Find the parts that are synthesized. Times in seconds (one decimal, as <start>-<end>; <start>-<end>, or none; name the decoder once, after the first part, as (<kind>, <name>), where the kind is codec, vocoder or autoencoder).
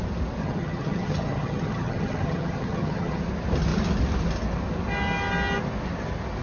0.4-3.2 (vocoder, HiFi-GAN)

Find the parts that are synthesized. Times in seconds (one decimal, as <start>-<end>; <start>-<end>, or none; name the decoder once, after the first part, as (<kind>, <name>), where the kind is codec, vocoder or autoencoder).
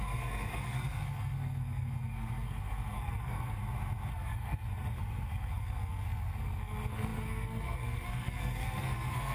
0.0-3.6 (codec, SNAC); 4.1-9.3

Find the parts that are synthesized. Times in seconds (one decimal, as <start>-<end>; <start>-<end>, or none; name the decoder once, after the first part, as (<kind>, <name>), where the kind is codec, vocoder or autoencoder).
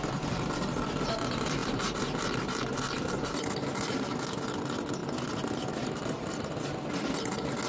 none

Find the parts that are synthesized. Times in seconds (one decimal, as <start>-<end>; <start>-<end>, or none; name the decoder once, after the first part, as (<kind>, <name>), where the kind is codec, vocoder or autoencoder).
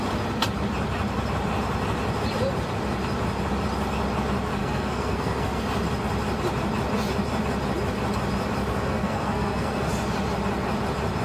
4.6-5.6 (codec, SNAC); 8.7-9.9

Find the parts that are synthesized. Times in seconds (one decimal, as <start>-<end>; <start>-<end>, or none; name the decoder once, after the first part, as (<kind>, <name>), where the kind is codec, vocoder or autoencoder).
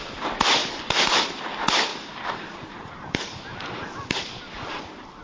0.6-1.4 (vocoder, BigVGAN v2); 1.9-5.2